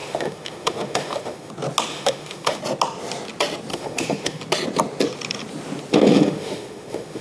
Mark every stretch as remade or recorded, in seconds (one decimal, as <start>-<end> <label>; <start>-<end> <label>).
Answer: 0.0-1.5 remade; 1.5-1.9 recorded; 1.9-2.6 remade; 2.6-3.7 recorded; 3.7-4.4 remade; 4.4-5.9 recorded; 5.9-7.2 remade